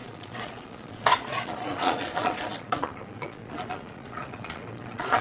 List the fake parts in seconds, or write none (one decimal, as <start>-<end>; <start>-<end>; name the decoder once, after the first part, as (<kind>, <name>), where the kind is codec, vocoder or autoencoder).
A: 0.0-5.2 (vocoder, Vocos)